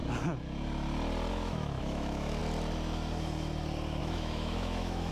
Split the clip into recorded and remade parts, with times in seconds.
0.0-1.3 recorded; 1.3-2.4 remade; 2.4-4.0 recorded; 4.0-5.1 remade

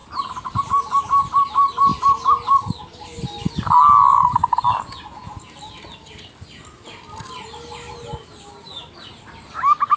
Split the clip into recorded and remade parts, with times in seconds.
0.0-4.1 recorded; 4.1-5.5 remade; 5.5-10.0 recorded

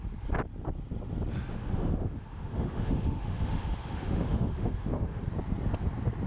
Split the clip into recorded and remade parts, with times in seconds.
0.0-1.5 recorded; 1.5-5.2 remade; 5.2-6.3 recorded

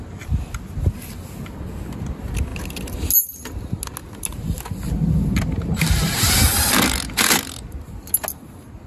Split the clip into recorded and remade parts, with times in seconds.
0.0-8.9 recorded